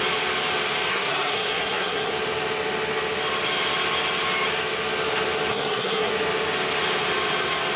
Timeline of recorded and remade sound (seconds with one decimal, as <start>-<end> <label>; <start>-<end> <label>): 0.0-0.9 recorded; 0.9-2.1 remade; 2.1-5.5 recorded; 5.5-6.1 remade; 6.1-7.8 recorded